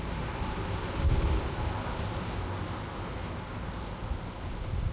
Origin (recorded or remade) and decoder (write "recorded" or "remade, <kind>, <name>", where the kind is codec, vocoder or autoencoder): recorded